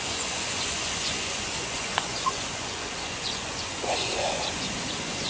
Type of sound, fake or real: fake